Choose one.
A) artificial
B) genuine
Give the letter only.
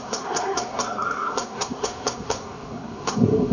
A